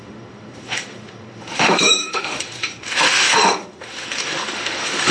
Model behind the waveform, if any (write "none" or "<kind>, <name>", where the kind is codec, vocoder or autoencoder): autoencoder, DAC-VAE